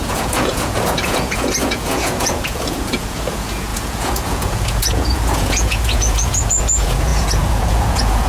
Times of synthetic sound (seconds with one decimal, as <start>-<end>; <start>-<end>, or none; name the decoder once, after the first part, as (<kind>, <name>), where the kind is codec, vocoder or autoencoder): 0.0-8.3 (vocoder, Vocos)